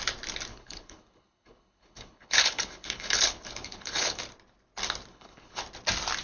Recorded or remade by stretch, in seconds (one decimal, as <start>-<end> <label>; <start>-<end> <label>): 0.0-0.5 recorded; 0.5-4.2 remade; 4.2-5.1 recorded; 5.1-5.6 remade; 5.6-6.2 recorded

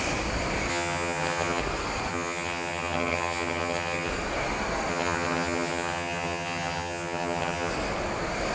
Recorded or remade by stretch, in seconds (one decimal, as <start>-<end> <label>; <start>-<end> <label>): 0.0-0.7 recorded; 0.7-1.6 remade; 1.6-2.1 recorded; 2.1-4.1 remade; 4.1-4.9 recorded; 4.9-7.7 remade; 7.7-8.5 recorded